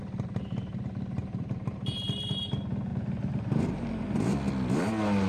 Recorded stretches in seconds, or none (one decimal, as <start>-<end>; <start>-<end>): 0.0-1.2; 1.8-5.3